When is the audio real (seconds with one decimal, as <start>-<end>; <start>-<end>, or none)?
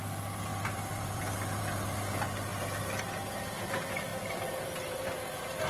0.0-0.5; 1.6-4.1; 5.2-5.7